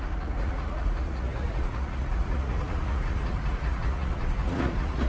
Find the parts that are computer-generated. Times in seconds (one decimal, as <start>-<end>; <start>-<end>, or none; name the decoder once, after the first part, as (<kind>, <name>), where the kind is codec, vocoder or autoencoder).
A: 0.0-5.1 (vocoder, Vocos)